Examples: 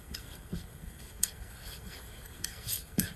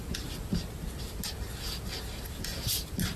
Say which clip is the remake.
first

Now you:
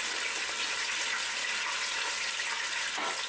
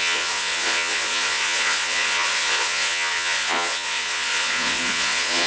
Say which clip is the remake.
second